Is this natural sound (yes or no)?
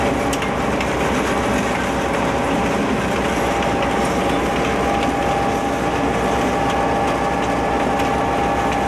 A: yes